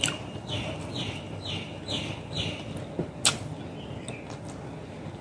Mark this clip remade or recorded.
recorded